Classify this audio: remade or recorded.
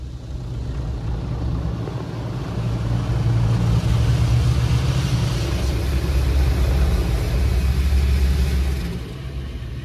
recorded